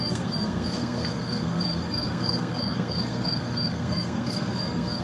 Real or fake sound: fake